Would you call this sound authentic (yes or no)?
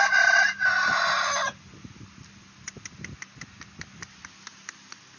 yes